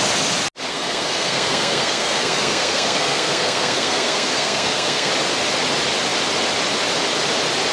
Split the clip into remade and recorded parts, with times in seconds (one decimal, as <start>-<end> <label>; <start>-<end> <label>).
0.0-0.7 recorded; 0.7-5.1 remade; 5.1-7.7 recorded